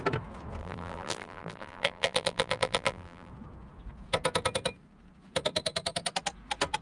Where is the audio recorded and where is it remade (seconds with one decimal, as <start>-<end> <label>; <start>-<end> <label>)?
0.0-0.6 recorded; 0.6-3.3 remade; 3.3-6.8 recorded